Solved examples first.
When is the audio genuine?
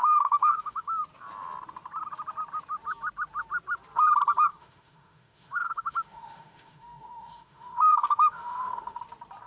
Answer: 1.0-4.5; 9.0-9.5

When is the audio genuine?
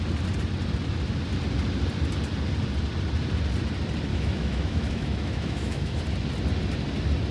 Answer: 0.0-4.1; 6.0-7.3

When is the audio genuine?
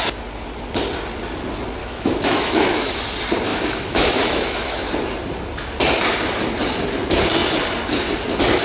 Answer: 0.0-1.8; 3.0-3.5; 4.9-8.6